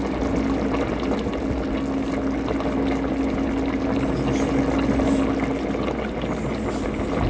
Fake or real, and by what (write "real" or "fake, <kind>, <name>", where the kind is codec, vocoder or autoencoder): real